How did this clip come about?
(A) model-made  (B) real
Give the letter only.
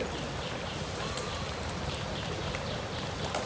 B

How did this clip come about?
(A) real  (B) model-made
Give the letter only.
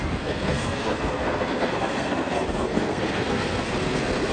B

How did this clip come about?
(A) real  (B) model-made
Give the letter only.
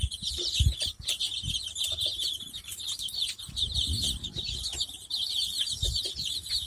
B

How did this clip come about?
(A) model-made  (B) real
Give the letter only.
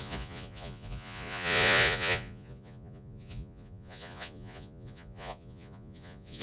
A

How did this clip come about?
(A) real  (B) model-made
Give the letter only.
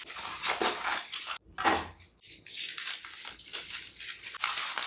A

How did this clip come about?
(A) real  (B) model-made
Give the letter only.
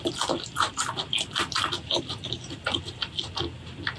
A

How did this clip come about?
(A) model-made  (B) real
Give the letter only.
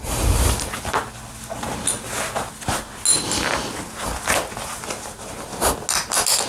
B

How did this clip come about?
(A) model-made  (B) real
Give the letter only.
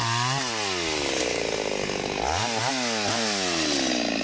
B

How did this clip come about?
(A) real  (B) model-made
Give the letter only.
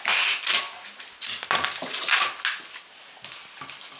A